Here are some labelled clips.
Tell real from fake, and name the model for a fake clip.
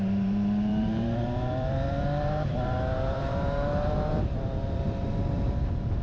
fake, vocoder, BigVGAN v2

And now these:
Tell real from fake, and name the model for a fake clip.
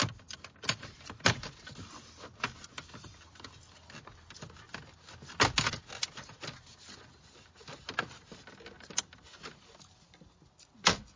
real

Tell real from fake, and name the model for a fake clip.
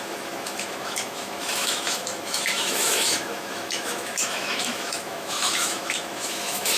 fake, autoencoder, DAC-VAE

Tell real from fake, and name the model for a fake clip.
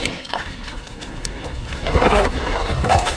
fake, codec, SNAC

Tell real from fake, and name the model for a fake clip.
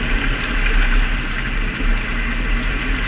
fake, vocoder, BigVGAN v2